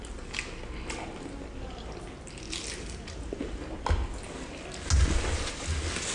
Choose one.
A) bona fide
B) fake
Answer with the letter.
A